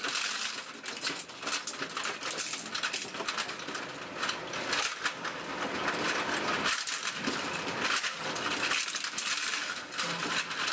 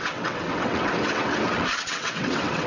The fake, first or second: second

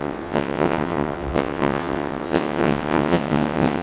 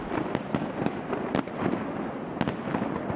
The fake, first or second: first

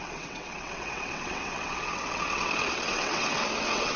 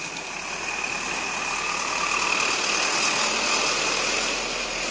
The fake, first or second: first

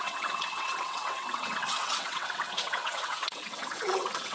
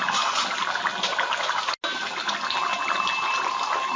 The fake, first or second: first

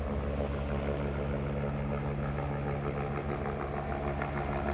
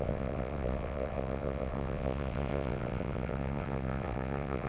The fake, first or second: second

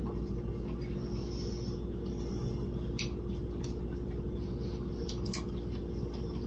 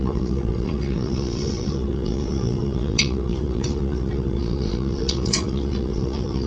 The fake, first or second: second